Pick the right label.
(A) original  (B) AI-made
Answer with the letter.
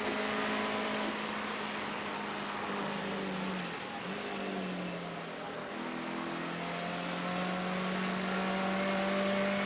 A